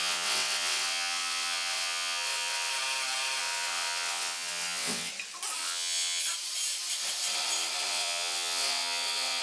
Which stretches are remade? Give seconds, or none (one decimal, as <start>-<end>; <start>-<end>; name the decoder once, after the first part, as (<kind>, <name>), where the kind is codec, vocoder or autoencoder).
0.0-2.7 (vocoder, WaveNeXt); 3.4-5.1; 5.6-6.2; 7.9-9.4